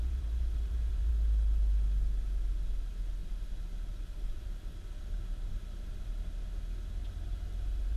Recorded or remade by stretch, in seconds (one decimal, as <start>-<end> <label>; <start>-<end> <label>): 0.0-1.1 remade; 1.1-7.0 recorded; 7.0-8.0 remade